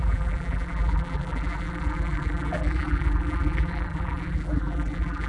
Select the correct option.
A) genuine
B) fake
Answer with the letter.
B